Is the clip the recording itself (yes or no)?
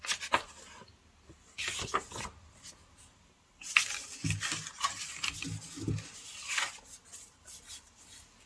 yes